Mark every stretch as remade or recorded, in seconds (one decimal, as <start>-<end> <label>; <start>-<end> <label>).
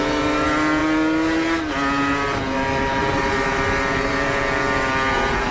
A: 0.0-5.5 recorded